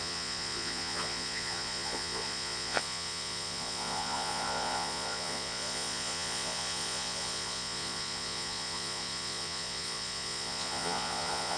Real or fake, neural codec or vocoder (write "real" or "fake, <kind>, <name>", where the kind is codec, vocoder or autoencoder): fake, vocoder, Vocos